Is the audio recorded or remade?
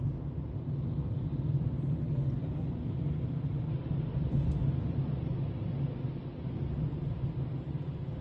recorded